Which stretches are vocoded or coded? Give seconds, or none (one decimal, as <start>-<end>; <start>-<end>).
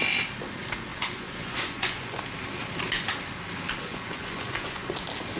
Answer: 0.9-2.2; 3.9-4.9